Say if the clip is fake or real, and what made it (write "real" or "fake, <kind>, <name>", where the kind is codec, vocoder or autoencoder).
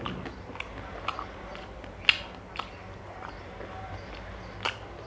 real